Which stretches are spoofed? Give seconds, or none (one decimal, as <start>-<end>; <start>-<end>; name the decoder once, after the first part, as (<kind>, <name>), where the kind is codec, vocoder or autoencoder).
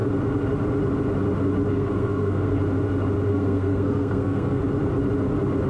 1.7-2.6 (codec, SNAC); 3.3-4.6